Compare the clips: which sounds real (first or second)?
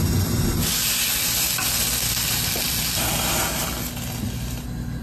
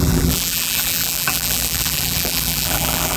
first